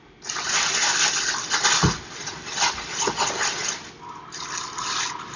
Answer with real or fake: real